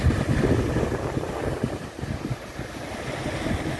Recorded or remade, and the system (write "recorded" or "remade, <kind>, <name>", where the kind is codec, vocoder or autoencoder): recorded